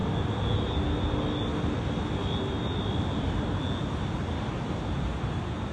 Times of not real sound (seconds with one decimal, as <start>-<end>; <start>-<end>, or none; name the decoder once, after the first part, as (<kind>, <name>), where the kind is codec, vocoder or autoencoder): none